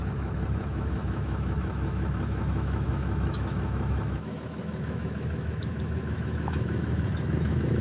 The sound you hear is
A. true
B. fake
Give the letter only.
B